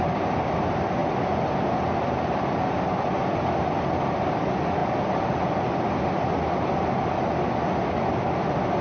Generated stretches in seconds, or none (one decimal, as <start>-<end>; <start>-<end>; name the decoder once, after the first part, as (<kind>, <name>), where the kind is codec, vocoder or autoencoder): none